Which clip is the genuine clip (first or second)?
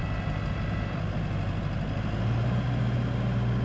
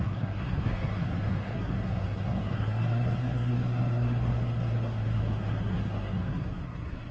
first